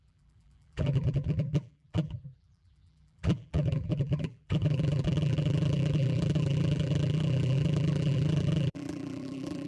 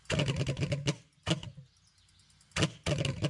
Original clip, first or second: second